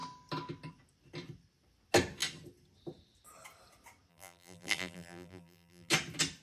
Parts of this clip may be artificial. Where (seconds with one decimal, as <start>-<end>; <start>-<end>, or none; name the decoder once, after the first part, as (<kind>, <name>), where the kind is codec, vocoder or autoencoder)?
4.1-5.9 (vocoder, BigVGAN v2)

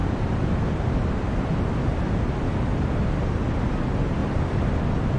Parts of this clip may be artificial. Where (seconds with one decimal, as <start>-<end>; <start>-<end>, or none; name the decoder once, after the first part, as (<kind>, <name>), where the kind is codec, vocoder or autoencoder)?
4.2-4.8 (vocoder, BigVGAN v2)

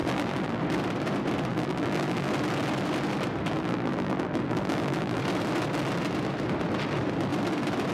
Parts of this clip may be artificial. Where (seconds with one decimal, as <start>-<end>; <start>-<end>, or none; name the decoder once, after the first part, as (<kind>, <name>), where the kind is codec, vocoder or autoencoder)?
0.0-0.6 (vocoder, BigVGAN v2); 1.5-2.3; 3.5-5.2

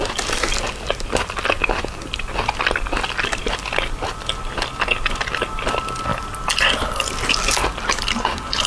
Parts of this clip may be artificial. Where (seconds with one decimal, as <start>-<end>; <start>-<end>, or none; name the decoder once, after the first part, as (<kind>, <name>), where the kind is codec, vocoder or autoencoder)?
none

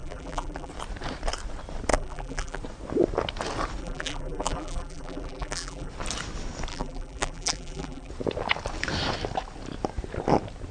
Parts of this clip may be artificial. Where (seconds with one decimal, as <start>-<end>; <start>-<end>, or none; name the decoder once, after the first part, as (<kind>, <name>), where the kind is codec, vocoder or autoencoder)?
0.0-0.7 (vocoder, BigVGAN v2); 1.9-2.6; 3.8-5.9; 6.7-8.1

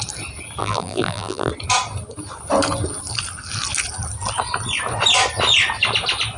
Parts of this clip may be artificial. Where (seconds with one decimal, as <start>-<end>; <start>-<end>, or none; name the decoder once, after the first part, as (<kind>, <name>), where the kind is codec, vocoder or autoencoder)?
0.6-1.5 (vocoder, BigVGAN v2)

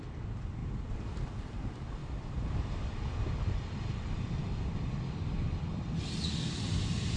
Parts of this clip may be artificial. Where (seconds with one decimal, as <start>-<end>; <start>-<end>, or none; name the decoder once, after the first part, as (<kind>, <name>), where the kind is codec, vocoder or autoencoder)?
0.6-1.1 (vocoder, BigVGAN v2); 2.0-5.7

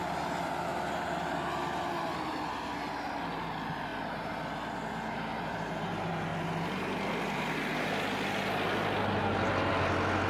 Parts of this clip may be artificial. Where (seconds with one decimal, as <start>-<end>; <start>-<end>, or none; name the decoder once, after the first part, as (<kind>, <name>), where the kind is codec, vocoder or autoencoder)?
none